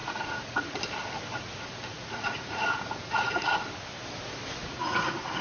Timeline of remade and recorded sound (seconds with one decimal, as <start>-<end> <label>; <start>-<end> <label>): 0.0-0.8 remade; 0.8-1.9 recorded; 1.9-3.6 remade; 3.6-4.6 recorded; 4.6-5.4 remade

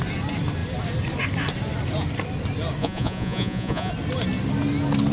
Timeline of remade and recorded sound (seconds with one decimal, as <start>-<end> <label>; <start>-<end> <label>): 0.0-2.8 recorded; 2.8-3.9 remade; 3.9-5.1 recorded

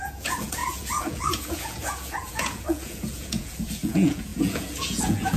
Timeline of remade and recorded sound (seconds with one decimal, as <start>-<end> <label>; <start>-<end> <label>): 0.0-5.4 remade

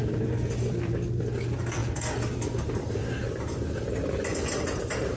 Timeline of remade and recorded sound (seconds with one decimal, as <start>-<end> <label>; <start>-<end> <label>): 0.0-5.2 recorded

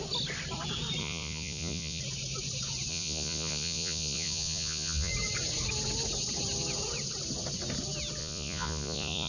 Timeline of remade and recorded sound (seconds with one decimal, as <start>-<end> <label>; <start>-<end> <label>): 0.0-1.0 recorded; 1.0-2.0 remade; 2.0-2.9 recorded; 2.9-5.1 remade; 5.1-8.2 recorded; 8.2-9.3 remade